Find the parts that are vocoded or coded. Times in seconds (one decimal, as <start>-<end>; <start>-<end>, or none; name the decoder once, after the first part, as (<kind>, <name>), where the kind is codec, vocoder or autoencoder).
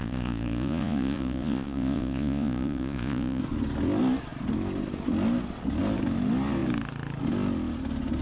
0.0-3.4 (vocoder, Vocos)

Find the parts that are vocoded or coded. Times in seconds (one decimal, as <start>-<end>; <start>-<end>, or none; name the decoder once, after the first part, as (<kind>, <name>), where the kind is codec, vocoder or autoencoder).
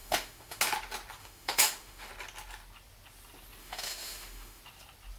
0.0-0.6 (autoencoder, DAC-VAE); 1.2-2.1; 3.6-4.6